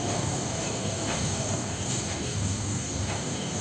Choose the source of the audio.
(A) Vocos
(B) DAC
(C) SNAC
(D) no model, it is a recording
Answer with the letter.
B